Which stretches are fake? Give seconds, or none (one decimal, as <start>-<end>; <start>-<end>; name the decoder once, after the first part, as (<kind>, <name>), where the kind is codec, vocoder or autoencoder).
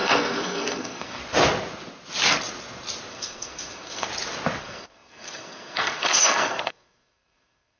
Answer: 0.0-1.2 (codec, SNAC); 3.1-4.1; 4.6-7.8